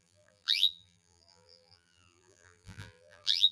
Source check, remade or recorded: remade